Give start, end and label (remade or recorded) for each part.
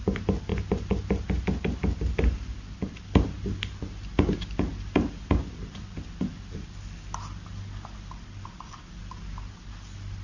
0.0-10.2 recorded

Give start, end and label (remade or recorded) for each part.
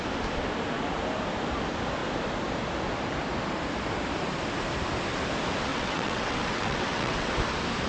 0.0-5.7 recorded; 5.7-7.3 remade; 7.3-7.9 recorded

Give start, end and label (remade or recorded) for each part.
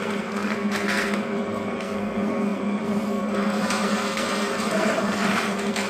0.0-5.9 remade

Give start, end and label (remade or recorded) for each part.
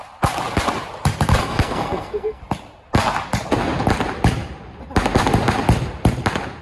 0.0-1.4 recorded; 1.4-2.4 remade; 2.4-6.6 recorded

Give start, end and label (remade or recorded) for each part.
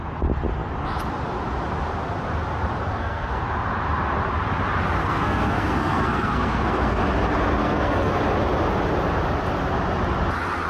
0.0-2.9 recorded; 2.9-3.4 remade; 3.4-5.0 recorded; 5.0-7.0 remade; 7.0-7.6 recorded; 7.6-8.1 remade; 8.1-10.7 recorded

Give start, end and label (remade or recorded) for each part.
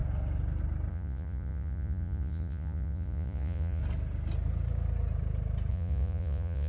0.0-0.9 recorded; 0.9-3.8 remade; 3.8-5.7 recorded; 5.7-6.7 remade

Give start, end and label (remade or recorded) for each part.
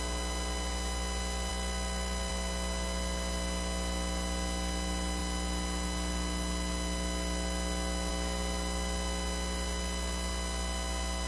0.0-11.3 recorded